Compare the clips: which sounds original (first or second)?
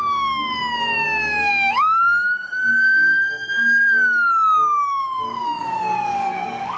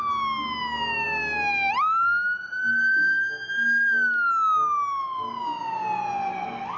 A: second